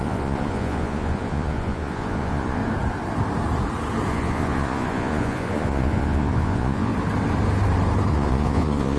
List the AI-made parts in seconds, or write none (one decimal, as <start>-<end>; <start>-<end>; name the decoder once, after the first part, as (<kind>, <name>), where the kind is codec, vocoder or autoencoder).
0.0-2.6 (vocoder, Vocos); 4.1-6.9; 8.1-9.0